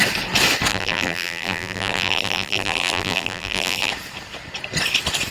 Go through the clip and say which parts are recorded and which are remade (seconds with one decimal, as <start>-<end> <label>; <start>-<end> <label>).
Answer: 0.0-0.7 recorded; 0.7-3.9 remade; 3.9-5.3 recorded